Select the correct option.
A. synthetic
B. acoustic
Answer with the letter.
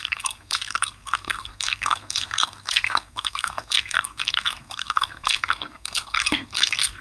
A